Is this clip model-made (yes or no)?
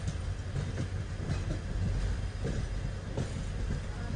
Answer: no